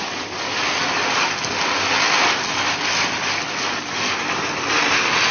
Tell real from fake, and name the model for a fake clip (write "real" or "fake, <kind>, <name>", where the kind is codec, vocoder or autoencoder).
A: real